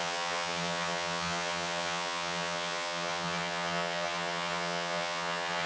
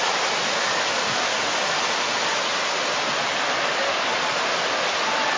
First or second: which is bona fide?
second